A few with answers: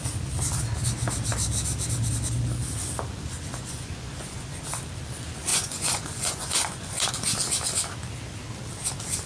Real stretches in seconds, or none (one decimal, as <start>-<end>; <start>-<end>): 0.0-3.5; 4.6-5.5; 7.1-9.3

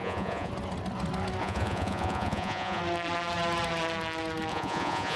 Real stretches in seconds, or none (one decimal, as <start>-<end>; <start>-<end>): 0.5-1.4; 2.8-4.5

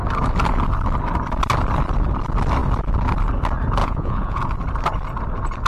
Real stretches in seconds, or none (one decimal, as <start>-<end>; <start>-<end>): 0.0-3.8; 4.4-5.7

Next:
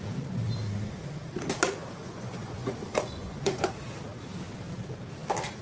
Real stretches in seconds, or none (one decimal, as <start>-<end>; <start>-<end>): 0.0-2.0; 3.7-5.6

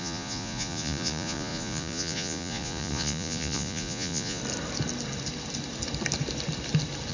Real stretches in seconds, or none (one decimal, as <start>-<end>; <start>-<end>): 4.4-7.1